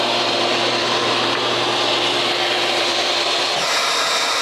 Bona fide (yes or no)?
no